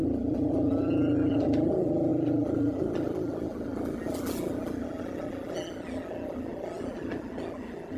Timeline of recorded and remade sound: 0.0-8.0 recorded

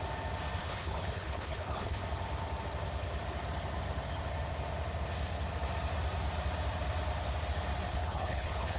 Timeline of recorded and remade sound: 0.0-0.6 recorded; 0.6-2.0 remade; 2.0-7.9 recorded; 7.9-8.8 remade

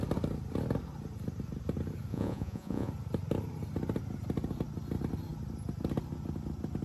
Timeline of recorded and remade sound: 0.0-2.1 recorded; 2.1-2.9 remade; 2.9-6.8 recorded